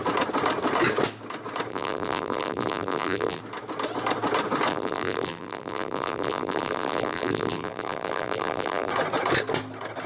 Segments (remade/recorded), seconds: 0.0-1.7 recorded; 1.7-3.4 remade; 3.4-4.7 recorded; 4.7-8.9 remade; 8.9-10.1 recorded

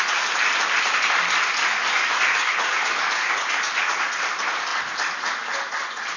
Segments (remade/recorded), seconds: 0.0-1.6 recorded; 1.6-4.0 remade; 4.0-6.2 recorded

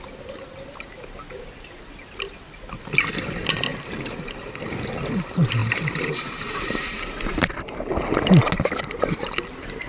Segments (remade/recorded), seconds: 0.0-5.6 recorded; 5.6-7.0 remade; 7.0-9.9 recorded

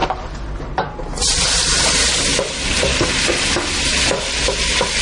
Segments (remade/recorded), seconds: 0.0-5.0 recorded

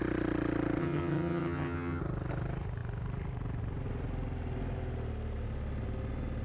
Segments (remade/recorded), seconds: 0.0-0.8 recorded; 0.8-2.0 remade; 2.0-6.4 recorded

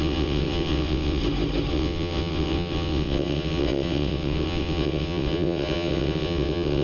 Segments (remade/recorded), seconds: 0.0-1.2 remade; 1.2-1.7 recorded; 1.7-6.8 remade

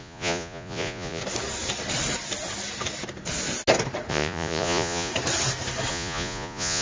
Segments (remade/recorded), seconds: 0.0-1.2 remade; 1.2-4.1 recorded; 4.1-5.1 remade; 5.1-5.9 recorded; 5.9-6.8 remade

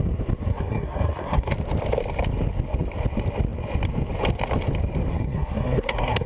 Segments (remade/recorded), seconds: 0.0-0.5 recorded; 0.5-1.5 remade; 1.5-5.1 recorded; 5.1-6.3 remade